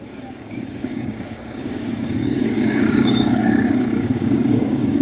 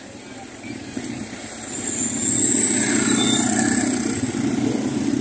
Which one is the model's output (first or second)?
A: first